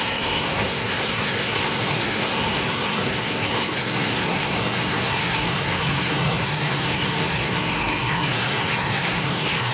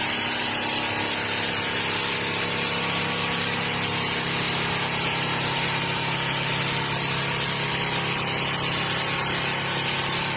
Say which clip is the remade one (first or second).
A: first